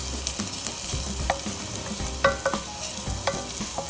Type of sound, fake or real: real